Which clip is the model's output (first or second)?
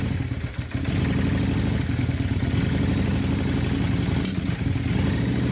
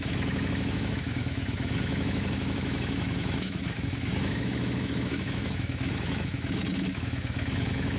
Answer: second